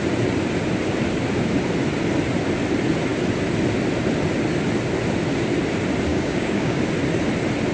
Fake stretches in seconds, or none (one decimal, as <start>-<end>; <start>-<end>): 6.1-6.8